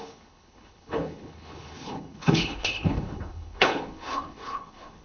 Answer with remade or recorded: remade